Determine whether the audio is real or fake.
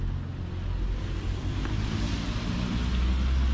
real